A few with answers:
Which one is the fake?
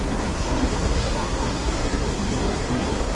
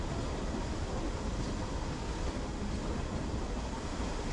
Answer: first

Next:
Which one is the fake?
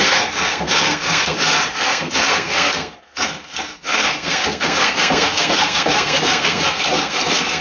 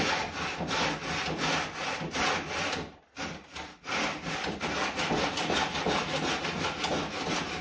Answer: first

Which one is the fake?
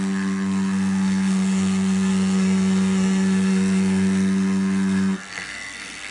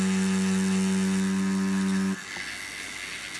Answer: first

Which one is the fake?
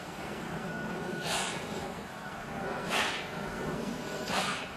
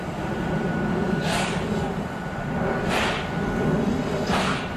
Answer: first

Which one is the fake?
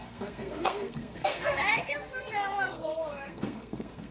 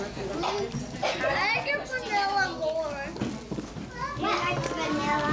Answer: first